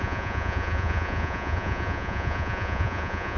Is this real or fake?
fake